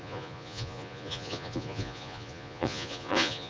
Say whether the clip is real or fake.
fake